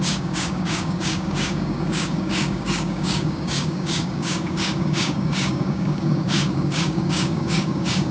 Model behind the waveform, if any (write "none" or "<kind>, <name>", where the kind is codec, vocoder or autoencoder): codec, DAC